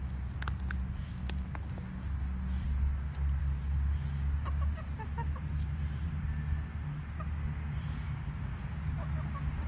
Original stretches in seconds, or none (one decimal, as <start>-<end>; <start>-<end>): 0.0-9.7